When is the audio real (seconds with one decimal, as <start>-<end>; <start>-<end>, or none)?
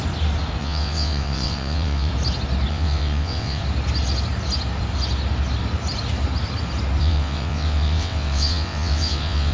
0.0-0.6; 2.1-2.7; 3.6-7.0